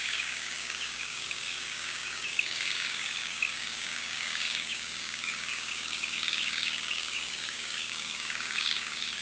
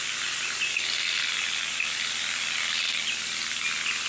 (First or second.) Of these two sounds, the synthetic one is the first